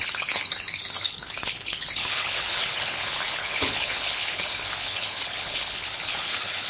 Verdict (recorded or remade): remade